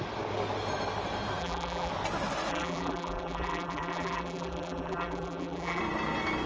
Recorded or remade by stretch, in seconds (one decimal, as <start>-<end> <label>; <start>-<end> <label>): 0.0-1.4 recorded; 1.4-1.9 remade; 1.9-2.5 recorded; 2.5-5.8 remade; 5.8-6.5 recorded